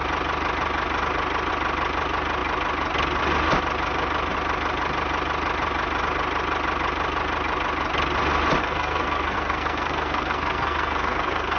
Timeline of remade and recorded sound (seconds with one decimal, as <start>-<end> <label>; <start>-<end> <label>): 0.0-8.6 recorded; 8.6-11.6 remade